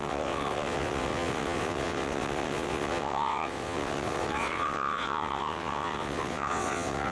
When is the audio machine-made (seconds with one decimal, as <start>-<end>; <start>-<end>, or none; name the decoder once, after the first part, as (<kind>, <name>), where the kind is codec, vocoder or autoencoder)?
0.0-7.1 (vocoder, WaveNeXt)